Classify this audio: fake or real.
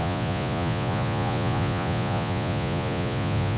fake